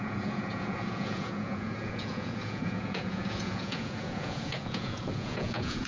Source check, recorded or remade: remade